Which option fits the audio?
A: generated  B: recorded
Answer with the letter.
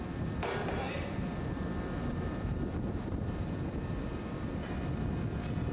A